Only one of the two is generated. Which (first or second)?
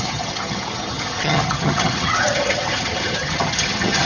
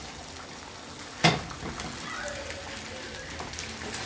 first